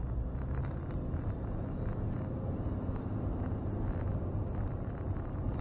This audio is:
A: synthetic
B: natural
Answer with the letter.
B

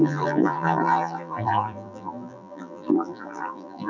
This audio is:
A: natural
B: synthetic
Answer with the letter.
B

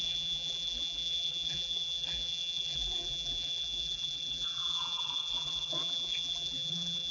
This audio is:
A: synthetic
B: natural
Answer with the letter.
A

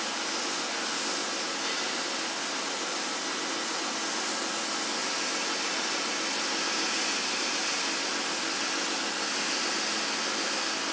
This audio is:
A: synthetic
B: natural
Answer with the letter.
B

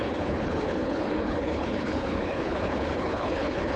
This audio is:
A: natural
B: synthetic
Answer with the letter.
B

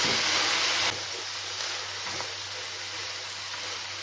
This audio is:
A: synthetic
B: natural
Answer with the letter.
B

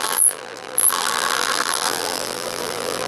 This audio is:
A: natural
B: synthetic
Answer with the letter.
B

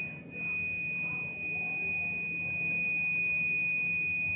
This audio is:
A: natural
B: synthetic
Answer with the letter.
A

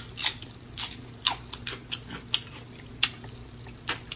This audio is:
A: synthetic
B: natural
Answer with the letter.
B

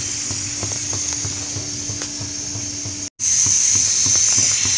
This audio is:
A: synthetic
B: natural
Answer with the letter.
B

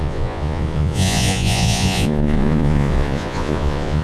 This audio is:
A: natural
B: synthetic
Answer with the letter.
B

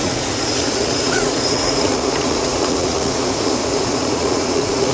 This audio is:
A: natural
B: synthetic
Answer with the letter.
B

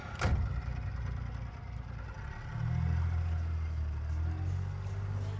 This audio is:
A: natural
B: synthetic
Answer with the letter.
A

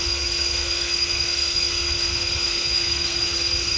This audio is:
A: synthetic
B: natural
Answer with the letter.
A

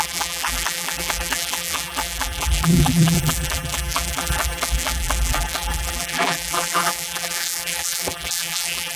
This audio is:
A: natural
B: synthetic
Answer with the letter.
B